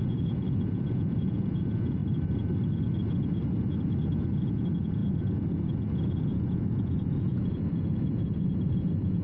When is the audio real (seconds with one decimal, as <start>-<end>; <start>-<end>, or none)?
2.0-4.5